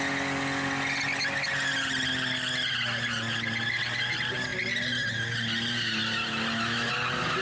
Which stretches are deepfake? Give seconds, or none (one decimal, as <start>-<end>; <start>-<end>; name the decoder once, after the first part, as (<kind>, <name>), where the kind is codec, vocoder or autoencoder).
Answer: none